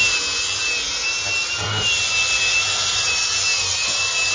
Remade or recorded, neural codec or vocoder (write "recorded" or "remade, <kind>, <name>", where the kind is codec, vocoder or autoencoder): recorded